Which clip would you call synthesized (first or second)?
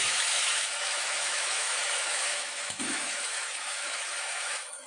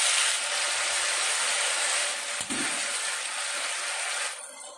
first